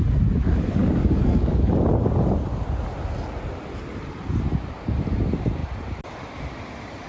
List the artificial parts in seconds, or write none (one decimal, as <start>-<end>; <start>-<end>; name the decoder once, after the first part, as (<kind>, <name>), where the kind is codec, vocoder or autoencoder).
0.8-1.7 (codec, DAC)